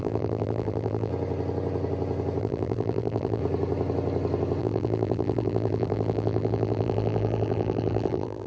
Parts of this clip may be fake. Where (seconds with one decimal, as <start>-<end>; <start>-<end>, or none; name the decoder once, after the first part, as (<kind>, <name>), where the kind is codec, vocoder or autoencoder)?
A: 0.0-1.1 (vocoder, BigVGAN v2); 2.4-3.4; 4.6-8.5